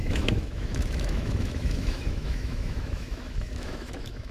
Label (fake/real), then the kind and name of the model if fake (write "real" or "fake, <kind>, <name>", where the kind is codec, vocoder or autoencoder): fake, autoencoder, DAC-VAE